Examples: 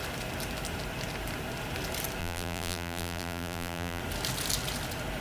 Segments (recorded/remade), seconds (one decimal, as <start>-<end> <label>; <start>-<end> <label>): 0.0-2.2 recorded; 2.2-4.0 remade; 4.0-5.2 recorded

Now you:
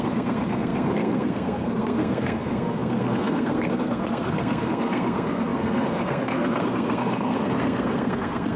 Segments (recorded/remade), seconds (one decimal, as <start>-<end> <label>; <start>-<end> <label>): 0.0-8.6 remade

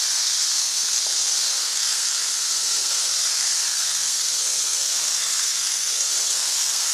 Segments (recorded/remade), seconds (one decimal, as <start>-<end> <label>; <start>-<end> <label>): 0.0-6.9 remade

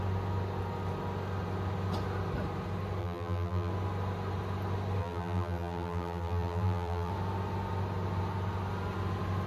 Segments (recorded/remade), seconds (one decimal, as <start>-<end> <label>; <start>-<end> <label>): 0.0-3.0 recorded; 3.0-3.7 remade; 3.7-5.0 recorded; 5.0-7.1 remade; 7.1-9.5 recorded

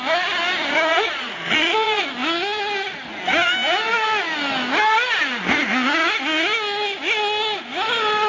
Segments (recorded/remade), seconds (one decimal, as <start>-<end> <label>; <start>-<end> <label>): 0.0-0.9 recorded; 0.9-2.0 remade; 2.0-8.3 recorded